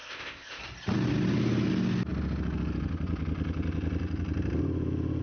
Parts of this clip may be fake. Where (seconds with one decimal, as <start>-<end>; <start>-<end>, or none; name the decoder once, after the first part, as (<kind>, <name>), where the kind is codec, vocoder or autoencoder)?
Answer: 0.0-0.6 (codec, ZipCodec)